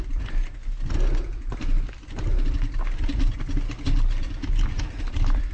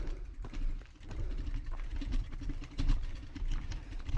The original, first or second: first